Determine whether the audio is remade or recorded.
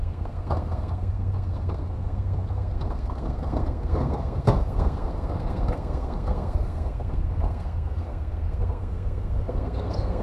remade